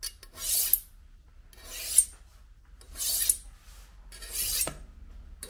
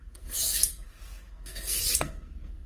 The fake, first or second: second